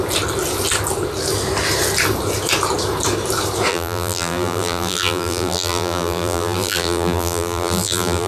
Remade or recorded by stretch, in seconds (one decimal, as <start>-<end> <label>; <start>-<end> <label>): 0.0-3.7 recorded; 3.7-8.3 remade